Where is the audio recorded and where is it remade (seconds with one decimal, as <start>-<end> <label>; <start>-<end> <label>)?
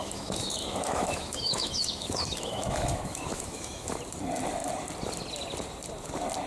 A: 0.0-3.9 remade; 3.9-6.5 recorded